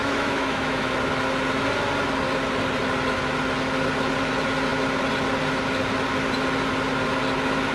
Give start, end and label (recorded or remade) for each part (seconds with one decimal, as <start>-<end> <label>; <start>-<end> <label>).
0.0-0.9 remade; 0.9-7.7 recorded